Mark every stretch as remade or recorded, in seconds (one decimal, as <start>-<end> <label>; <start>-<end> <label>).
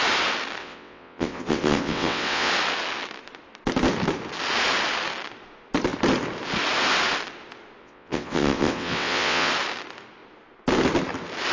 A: 0.0-0.6 recorded; 0.6-2.5 remade; 2.5-7.8 recorded; 7.8-9.5 remade; 9.5-11.5 recorded